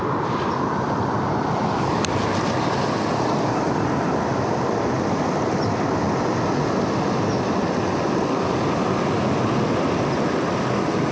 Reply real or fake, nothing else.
real